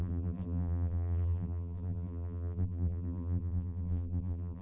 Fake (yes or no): yes